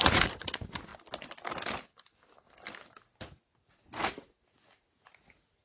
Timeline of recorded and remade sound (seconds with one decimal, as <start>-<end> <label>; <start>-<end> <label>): 0.0-0.9 remade; 0.9-3.3 recorded; 3.3-5.6 remade